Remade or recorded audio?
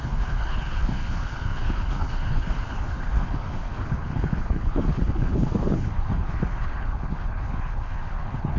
remade